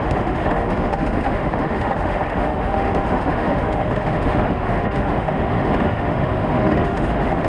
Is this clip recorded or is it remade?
remade